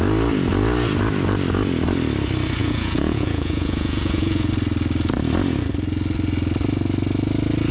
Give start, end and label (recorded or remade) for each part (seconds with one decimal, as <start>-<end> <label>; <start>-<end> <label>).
0.0-2.6 recorded; 2.6-4.5 remade; 4.5-7.7 recorded